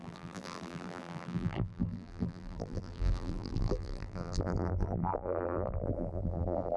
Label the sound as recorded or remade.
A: remade